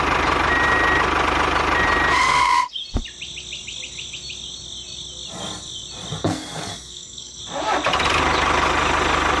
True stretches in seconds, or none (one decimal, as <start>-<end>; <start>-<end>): 0.0-2.2; 2.7-6.2; 7.4-9.4